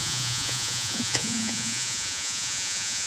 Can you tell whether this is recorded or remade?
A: remade